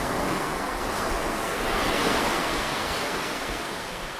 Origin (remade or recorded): remade